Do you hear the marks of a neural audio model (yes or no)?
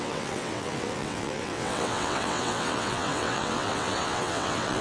yes